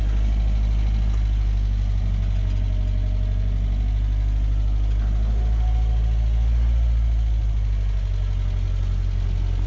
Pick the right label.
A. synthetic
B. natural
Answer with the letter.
B